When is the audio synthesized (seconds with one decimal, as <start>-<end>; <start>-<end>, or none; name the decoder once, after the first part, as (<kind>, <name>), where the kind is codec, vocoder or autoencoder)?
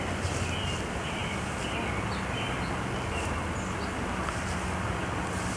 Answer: none